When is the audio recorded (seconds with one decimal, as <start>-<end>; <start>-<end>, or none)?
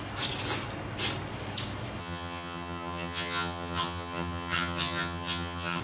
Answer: 0.0-2.0